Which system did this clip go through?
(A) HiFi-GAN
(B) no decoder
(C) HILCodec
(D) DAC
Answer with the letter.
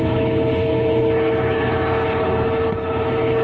C